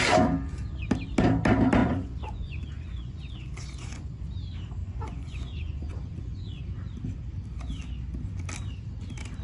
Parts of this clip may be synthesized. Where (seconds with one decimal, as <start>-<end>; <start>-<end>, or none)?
1.8-4.2; 4.8-6.6